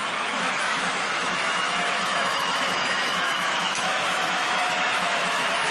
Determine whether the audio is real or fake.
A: fake